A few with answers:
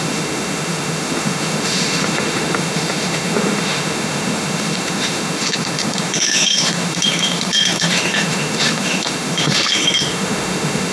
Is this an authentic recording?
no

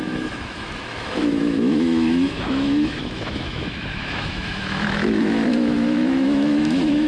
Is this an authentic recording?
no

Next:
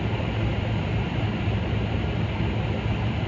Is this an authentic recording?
yes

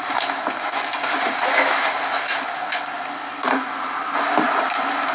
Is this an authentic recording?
yes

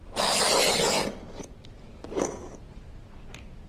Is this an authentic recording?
yes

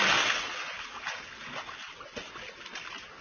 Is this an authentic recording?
yes